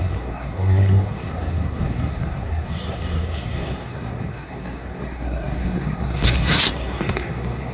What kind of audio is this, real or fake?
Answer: fake